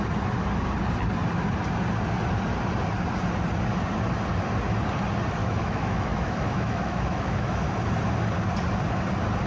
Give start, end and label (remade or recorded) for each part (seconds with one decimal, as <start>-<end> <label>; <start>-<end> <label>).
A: 0.0-5.4 recorded; 5.4-7.6 remade; 7.6-9.5 recorded